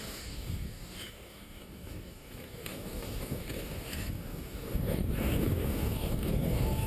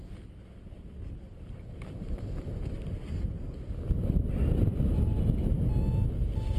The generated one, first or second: first